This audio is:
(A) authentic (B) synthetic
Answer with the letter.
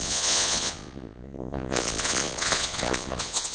B